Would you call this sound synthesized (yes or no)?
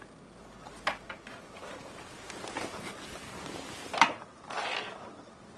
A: no